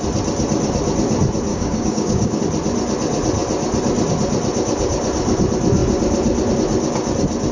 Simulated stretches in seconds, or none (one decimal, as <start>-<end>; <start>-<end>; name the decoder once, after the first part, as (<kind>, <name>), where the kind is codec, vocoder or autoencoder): 1.5-2.4 (codec, DAC)